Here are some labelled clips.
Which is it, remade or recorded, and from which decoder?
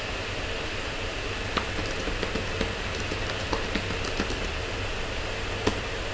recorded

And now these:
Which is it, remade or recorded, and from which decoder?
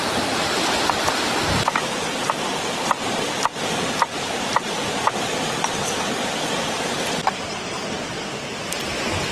recorded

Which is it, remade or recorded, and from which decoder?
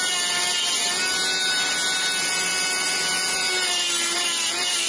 recorded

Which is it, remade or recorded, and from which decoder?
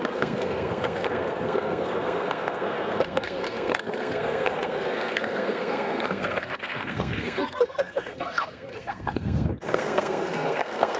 remade, codec, SNAC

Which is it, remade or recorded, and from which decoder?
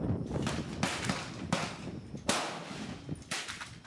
recorded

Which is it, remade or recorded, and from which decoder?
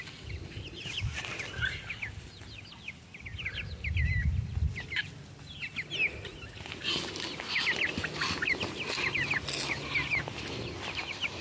recorded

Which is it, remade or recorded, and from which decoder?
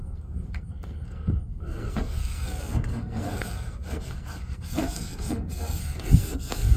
remade, codec, SNAC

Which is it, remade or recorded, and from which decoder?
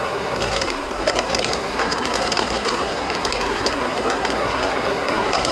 remade, codec, SNAC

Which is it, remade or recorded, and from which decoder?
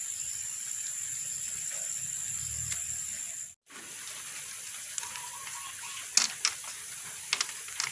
recorded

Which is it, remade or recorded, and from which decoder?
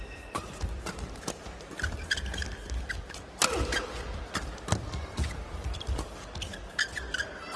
recorded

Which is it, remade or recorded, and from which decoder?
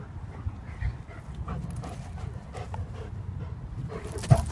recorded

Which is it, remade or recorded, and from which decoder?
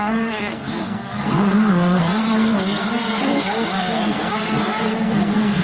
remade, codec, SNAC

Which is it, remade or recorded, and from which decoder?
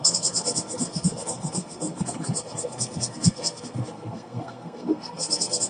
remade, codec, SNAC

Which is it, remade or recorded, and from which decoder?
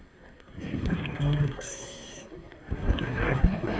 remade, codec, SNAC